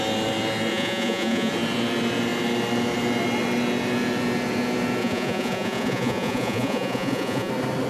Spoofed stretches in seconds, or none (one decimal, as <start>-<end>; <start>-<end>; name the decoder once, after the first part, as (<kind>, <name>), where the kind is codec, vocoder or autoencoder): 0.7-1.5 (vocoder, Vocos); 5.0-7.5